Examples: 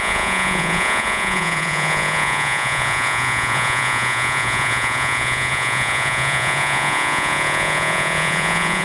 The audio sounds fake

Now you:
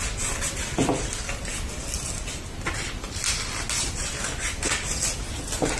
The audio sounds real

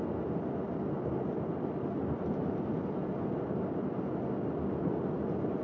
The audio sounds real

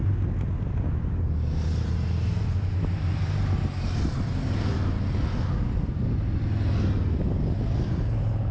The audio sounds real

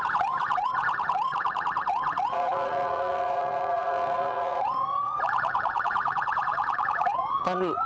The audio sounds fake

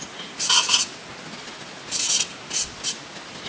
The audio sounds real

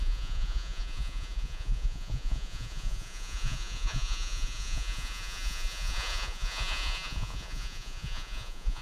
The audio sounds fake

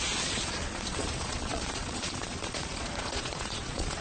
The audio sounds fake